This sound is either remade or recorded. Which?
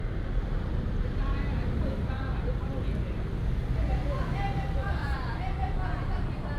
recorded